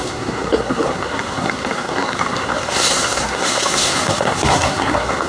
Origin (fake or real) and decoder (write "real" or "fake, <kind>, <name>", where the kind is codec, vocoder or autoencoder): fake, codec, SNAC